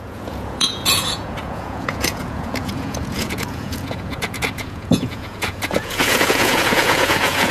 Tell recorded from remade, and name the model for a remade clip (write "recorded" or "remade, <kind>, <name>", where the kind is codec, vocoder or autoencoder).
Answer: remade, vocoder, Vocos